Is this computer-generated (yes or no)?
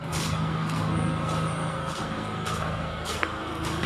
yes